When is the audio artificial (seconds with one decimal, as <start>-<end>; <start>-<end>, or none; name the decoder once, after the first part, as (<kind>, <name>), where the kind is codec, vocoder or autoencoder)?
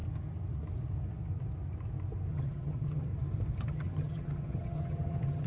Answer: 2.3-3.1 (vocoder, HiFi-GAN); 3.6-5.5